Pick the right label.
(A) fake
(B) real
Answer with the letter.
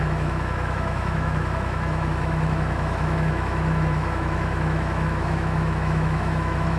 A